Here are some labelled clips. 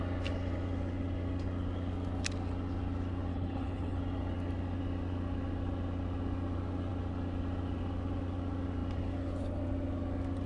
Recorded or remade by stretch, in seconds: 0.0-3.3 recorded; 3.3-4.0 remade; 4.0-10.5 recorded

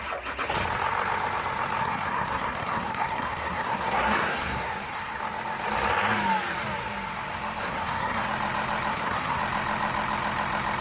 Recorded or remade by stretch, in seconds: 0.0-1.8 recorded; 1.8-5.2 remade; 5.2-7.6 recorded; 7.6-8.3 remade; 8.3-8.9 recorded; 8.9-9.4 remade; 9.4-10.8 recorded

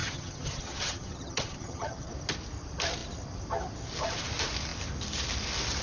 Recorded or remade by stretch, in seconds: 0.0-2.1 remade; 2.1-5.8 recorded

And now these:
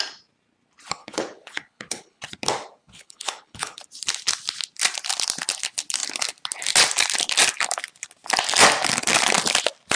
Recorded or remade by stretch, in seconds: 0.0-1.0 recorded; 1.0-2.2 remade; 2.2-2.8 recorded; 2.8-3.8 remade; 3.8-10.0 recorded

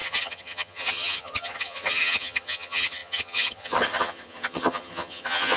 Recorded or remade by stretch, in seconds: 0.0-5.6 remade